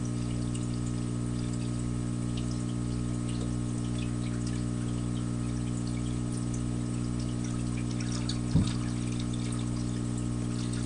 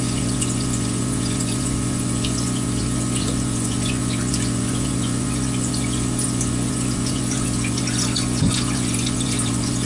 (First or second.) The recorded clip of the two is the first